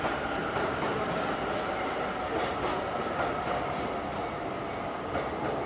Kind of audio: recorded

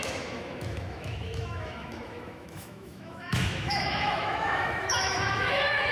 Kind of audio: remade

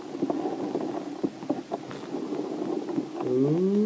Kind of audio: recorded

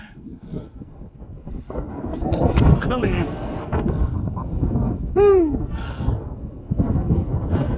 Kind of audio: remade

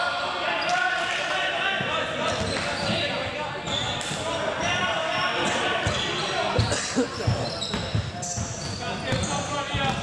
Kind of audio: recorded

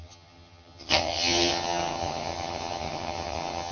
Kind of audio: remade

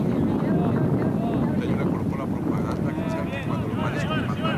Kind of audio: recorded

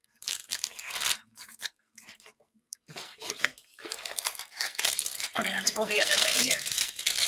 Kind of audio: remade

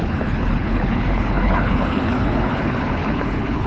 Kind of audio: remade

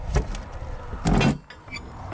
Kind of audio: recorded